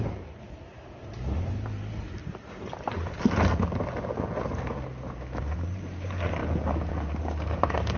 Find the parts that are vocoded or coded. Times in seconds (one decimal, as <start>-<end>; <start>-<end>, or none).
0.0-2.2; 5.4-6.4; 6.9-8.0